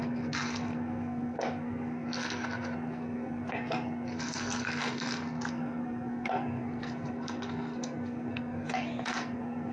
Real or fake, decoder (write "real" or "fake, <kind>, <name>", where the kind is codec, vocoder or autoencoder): fake, codec, SNAC